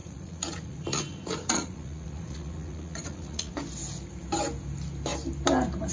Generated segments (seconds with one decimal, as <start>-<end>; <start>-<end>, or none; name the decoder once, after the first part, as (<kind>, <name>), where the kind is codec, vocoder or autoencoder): 0.0-3.5 (vocoder, Vocos)